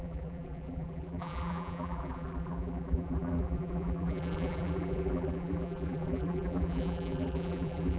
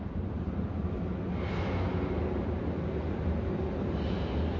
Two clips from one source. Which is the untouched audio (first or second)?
second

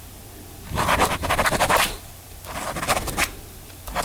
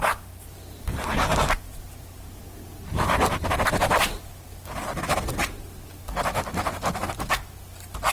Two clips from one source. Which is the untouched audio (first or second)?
second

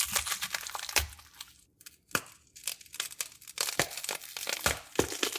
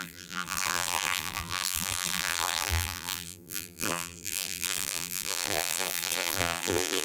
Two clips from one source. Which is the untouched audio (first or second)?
first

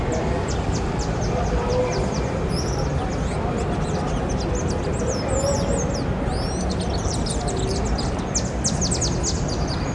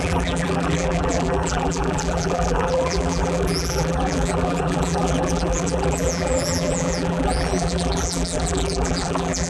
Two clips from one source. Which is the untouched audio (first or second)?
first